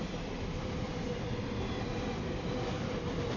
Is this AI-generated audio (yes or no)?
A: no